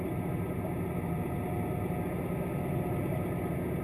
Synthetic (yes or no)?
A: no